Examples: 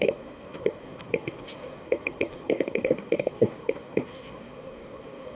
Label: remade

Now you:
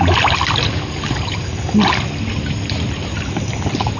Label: recorded